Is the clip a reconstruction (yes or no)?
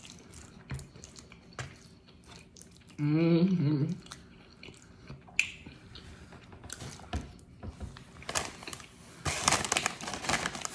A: no